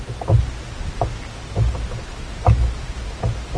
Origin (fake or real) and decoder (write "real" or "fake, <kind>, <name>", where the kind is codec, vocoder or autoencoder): real